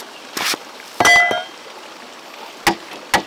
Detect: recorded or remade recorded